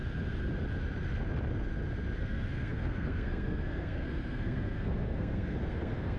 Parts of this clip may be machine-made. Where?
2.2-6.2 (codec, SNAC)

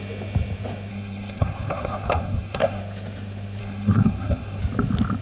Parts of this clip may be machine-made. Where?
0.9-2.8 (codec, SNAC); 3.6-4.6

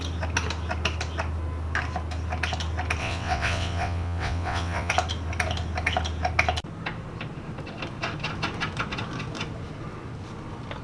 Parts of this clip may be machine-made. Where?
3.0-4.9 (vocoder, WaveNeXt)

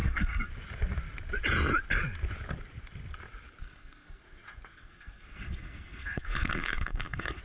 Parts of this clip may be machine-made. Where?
0.0-0.5 (codec, SNAC); 3.6-4.2; 4.7-7.4

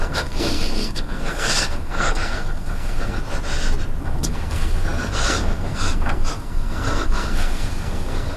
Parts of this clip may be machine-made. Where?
0.0-3.2 (codec, SNAC); 4.0-8.4

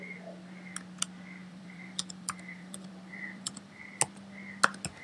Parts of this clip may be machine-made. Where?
1.4-3.8 (vocoder, BigVGAN v2)

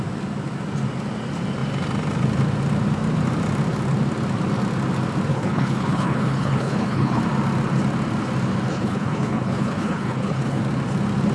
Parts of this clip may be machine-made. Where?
5.3-7.2 (codec, HILCodec); 8.7-10.6

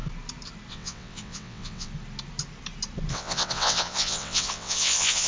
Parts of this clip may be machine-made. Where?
0.7-1.9 (vocoder, WaveNeXt); 3.1-5.3